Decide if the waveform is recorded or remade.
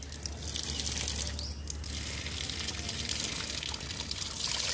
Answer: recorded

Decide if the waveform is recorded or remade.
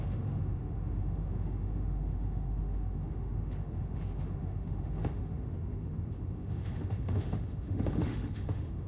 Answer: remade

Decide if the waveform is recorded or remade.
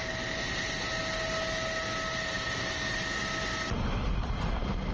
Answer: recorded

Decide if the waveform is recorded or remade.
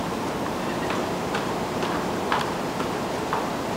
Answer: remade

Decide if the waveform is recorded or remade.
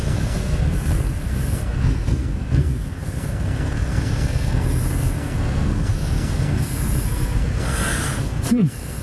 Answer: remade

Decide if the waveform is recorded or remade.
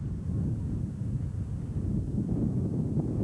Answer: recorded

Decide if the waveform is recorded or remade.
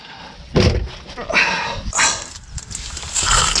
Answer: recorded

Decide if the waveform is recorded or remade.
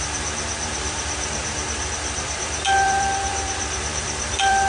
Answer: remade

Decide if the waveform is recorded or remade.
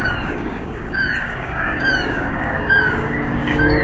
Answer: remade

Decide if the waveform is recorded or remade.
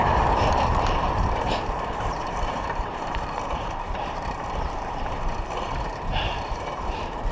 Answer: remade